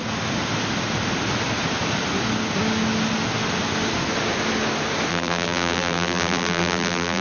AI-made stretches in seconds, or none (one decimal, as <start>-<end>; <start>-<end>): 5.1-7.2